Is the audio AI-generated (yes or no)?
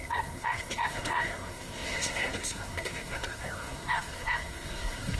yes